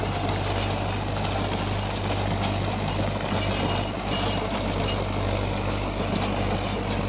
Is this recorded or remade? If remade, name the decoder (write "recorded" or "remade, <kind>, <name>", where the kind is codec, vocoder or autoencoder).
recorded